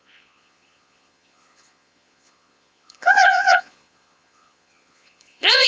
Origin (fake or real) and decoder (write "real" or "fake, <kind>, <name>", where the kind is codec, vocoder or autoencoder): fake, vocoder, Vocos